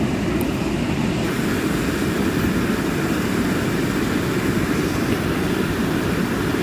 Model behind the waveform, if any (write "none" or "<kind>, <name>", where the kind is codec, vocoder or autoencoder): none